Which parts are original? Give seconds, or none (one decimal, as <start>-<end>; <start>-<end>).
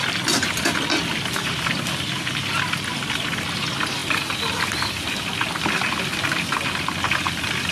0.0-7.7